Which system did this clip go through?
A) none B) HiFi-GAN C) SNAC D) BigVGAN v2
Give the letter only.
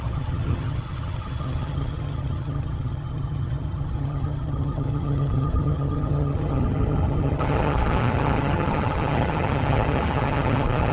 B